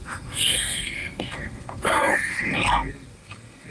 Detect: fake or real fake